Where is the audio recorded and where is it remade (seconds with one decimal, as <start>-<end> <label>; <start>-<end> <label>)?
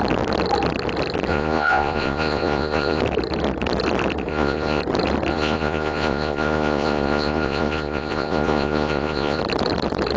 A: 0.0-1.3 recorded; 1.3-3.0 remade; 3.0-4.3 recorded; 4.3-4.8 remade; 4.8-5.3 recorded; 5.3-9.4 remade; 9.4-10.2 recorded